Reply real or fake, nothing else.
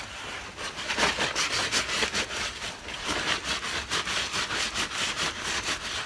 real